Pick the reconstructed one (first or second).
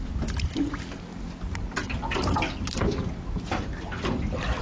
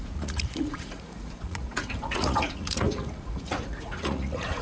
second